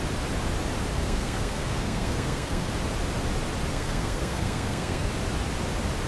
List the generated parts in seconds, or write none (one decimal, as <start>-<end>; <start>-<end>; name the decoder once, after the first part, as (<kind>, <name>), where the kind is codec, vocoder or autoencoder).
0.9-2.7 (codec, SNAC); 3.7-5.1